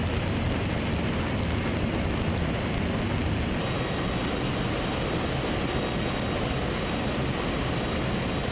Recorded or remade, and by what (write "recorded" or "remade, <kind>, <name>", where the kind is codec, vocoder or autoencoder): recorded